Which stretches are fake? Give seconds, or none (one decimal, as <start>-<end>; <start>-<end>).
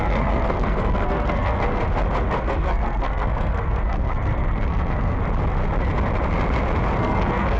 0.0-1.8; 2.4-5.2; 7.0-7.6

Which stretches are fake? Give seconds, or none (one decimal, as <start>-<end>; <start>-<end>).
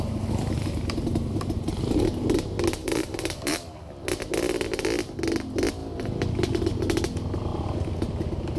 2.8-3.9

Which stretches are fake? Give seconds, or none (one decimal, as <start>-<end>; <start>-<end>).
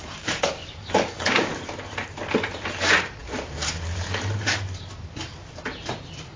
0.0-1.5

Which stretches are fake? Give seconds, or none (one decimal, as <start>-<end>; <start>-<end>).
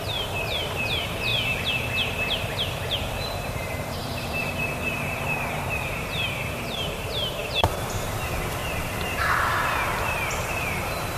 0.0-1.3; 2.4-8.6; 10.0-11.2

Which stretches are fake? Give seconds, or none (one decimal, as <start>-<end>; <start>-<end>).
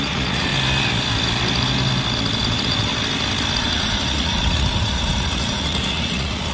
0.0-0.5; 2.4-2.9; 3.6-6.5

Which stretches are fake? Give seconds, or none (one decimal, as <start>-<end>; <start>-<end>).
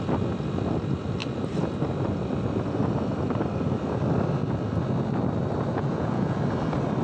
5.7-6.4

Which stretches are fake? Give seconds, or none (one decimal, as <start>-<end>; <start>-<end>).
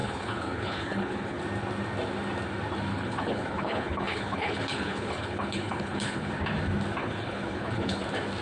0.0-1.4; 2.9-6.3; 7.0-8.0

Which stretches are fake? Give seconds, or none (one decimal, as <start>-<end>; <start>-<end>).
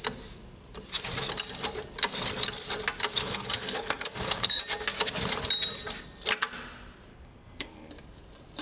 3.2-4.6; 7.1-7.9